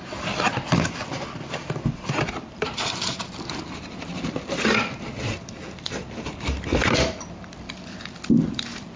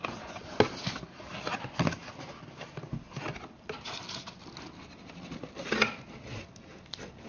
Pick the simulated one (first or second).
first